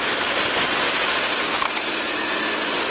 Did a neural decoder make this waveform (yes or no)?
no